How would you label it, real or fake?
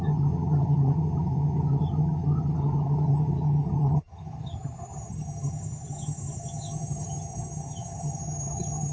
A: fake